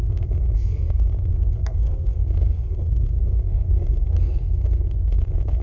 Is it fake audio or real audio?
fake